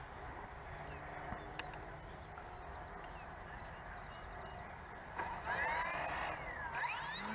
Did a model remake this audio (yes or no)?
no